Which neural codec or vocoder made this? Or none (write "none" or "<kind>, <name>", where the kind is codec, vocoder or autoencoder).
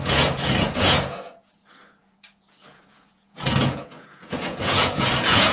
vocoder, Vocos